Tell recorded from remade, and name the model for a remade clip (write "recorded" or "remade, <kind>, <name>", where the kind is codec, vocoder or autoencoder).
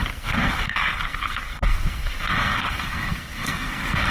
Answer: remade, codec, SNAC